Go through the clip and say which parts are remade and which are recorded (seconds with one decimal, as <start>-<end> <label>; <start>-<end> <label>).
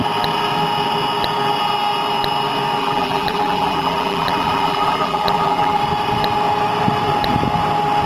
0.0-2.8 recorded; 2.8-5.8 remade; 5.8-8.1 recorded